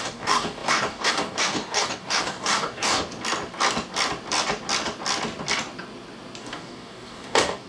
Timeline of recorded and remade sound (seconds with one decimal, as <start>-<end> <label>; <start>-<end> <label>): 0.0-3.0 remade; 3.0-6.4 recorded; 6.4-7.7 remade